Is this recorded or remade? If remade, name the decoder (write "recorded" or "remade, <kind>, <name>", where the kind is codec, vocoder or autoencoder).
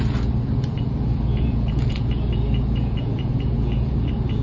remade, vocoder, Vocos